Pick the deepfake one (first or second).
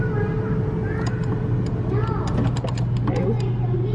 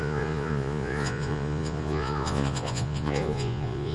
second